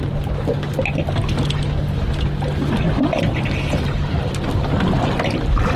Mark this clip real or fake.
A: real